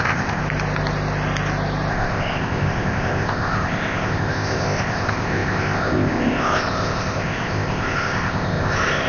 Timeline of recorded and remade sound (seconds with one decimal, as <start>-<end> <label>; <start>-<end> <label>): 0.0-0.4 remade; 0.4-1.9 recorded; 1.9-9.1 remade